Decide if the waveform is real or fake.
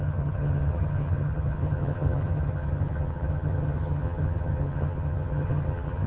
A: fake